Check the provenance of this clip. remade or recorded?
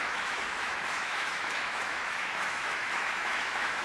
remade